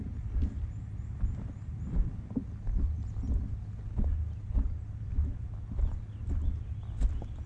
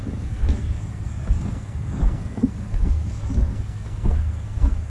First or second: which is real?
first